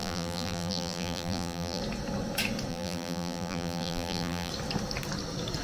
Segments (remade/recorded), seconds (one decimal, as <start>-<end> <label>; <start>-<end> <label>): 0.0-1.8 remade; 1.8-2.7 recorded; 2.7-4.5 remade; 4.5-5.6 recorded